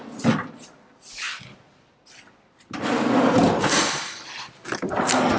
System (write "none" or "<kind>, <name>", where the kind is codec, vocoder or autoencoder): none